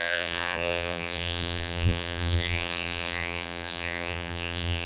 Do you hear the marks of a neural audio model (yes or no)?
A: yes